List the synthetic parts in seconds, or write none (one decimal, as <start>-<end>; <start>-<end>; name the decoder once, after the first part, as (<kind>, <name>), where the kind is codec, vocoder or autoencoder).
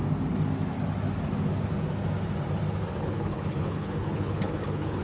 3.0-5.0 (codec, HILCodec)